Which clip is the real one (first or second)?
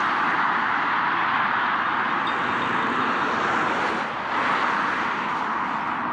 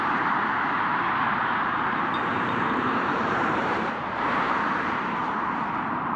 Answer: first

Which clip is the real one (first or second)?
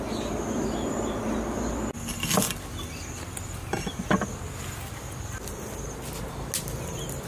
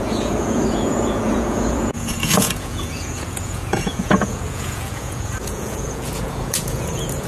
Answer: first